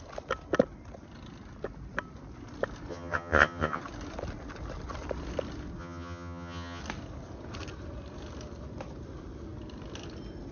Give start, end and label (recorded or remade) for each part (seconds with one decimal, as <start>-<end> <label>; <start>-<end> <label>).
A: 0.0-2.9 recorded; 2.9-3.8 remade; 3.8-5.8 recorded; 5.8-6.8 remade; 6.8-10.5 recorded